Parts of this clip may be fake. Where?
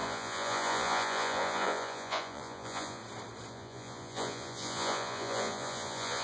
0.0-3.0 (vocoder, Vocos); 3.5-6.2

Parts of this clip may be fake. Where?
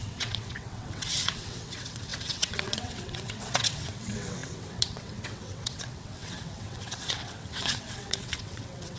0.0-9.0 (vocoder, WaveNeXt)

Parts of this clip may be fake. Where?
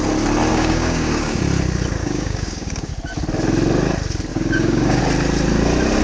0.5-1.4 (codec, DAC); 2.0-2.9; 4.3-5.0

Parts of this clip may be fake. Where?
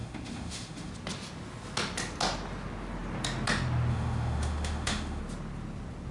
0.0-0.9 (autoencoder, DAC-VAE); 3.9-5.2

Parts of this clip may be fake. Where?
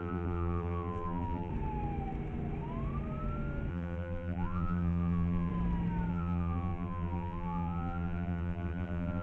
0.0-1.5 (vocoder, BigVGAN v2); 3.7-5.5; 6.1-9.2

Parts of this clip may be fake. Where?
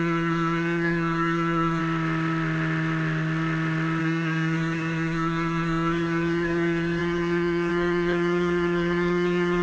0.0-1.8 (codec, SNAC); 4.0-9.6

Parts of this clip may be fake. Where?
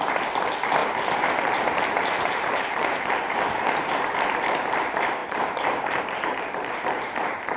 0.0-7.6 (vocoder, BigVGAN v2)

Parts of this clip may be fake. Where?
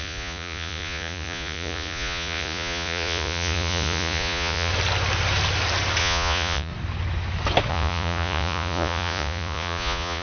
0.0-4.7 (vocoder, Vocos); 6.0-6.7; 7.7-10.2